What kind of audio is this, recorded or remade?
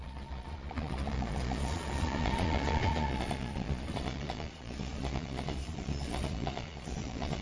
remade